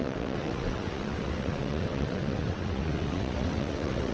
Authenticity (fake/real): fake